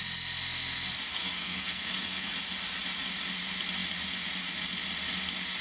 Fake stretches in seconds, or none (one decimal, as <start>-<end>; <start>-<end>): 1.2-2.3